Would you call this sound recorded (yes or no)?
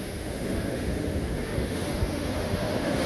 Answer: no